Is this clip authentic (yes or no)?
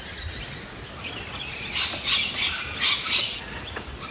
yes